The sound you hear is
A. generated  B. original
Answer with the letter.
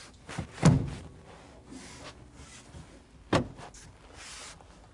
B